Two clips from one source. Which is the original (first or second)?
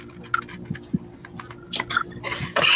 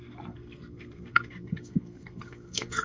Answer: first